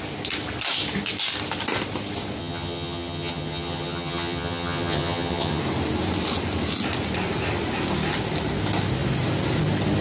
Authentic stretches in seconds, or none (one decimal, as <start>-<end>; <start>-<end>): 0.0-2.4; 5.6-10.0